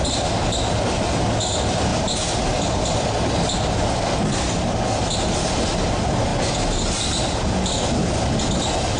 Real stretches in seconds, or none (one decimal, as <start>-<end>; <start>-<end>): 0.0-9.0